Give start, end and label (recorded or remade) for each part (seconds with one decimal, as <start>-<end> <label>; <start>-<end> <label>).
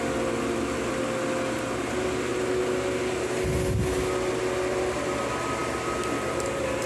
0.0-6.9 recorded